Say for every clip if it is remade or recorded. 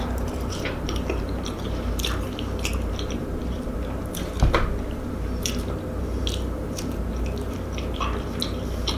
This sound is remade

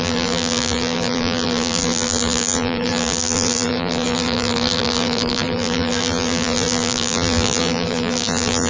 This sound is remade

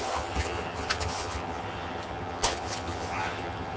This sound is remade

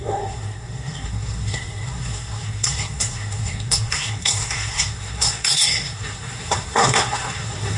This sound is remade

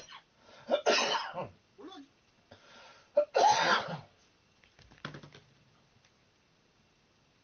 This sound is recorded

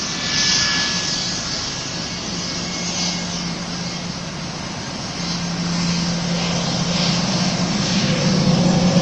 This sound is recorded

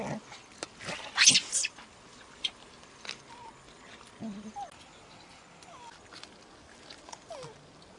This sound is recorded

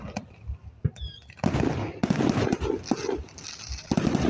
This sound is recorded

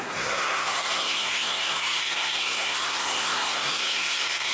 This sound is remade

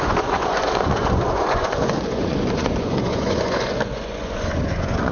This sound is remade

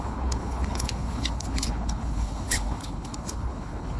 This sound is remade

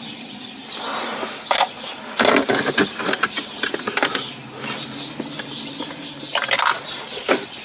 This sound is recorded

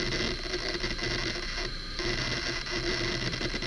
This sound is recorded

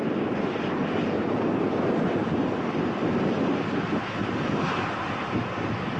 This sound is recorded